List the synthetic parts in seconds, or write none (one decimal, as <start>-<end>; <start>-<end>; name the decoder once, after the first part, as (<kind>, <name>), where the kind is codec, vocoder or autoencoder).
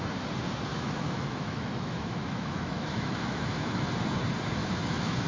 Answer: 0.7-3.9 (autoencoder, DAC-VAE); 4.6-5.3